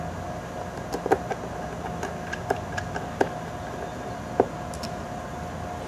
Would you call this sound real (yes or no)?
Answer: yes